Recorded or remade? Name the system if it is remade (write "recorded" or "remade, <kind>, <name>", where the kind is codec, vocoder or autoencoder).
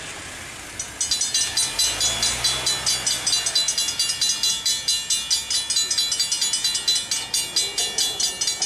recorded